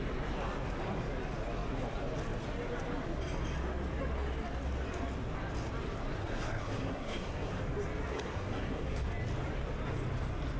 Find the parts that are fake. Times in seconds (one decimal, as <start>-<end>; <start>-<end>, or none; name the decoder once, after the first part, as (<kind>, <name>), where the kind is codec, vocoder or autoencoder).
6.2-7.6 (codec, SNAC); 8.1-9.1